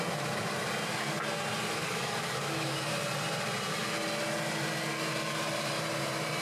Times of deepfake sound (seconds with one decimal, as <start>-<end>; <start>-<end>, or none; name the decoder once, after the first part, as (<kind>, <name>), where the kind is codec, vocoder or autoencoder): 1.8-2.9 (codec, DAC)